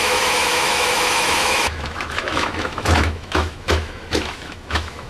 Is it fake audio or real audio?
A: fake